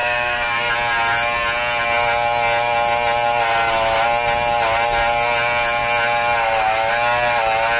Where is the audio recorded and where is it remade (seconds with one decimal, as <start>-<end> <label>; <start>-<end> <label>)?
0.0-0.7 remade; 0.7-7.8 recorded